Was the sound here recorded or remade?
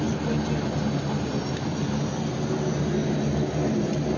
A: recorded